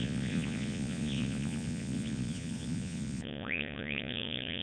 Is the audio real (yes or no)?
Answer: no